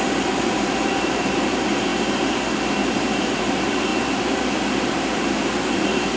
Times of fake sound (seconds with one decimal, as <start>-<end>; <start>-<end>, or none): 0.0-1.9; 2.9-3.9; 4.9-6.2

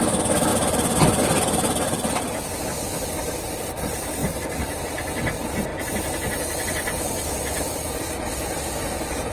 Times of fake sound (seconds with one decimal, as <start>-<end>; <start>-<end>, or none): 0.5-3.8; 4.2-4.8; 5.7-8.2

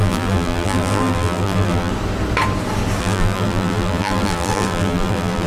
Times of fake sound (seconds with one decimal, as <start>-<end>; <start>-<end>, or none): 0.0-1.9; 3.0-5.5

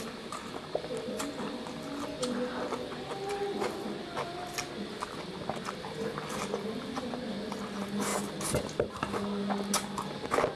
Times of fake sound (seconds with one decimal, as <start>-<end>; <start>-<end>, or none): none

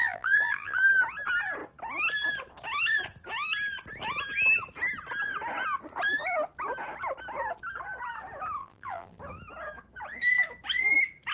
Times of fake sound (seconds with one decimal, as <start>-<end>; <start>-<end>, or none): 0.0-0.9; 8.6-9.2

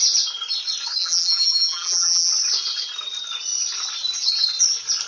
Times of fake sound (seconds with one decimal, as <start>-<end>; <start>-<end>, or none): 1.0-2.3

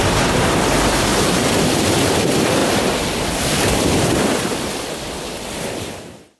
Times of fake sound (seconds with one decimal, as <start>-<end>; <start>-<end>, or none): 0.0-6.4

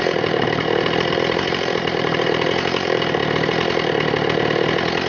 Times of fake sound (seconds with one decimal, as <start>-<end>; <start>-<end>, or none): 0.0-3.2